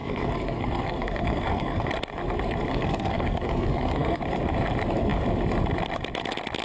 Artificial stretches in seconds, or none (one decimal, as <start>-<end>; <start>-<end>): 0.0-1.9; 2.7-4.2